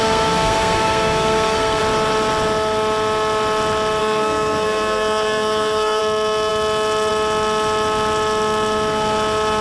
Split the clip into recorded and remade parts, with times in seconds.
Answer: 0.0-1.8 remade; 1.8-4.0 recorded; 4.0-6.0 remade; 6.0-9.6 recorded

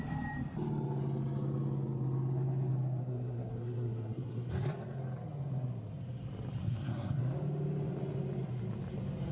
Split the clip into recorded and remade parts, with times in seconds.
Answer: 0.0-3.0 recorded; 3.0-4.5 remade; 4.5-6.6 recorded; 6.6-7.2 remade; 7.2-9.3 recorded